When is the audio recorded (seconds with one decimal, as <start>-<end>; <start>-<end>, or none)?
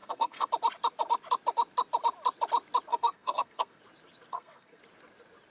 0.5-2.9; 3.8-4.3; 4.8-5.5